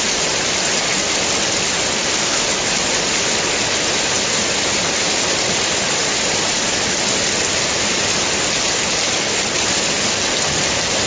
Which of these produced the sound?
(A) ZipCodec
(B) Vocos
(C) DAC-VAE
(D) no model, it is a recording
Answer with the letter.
D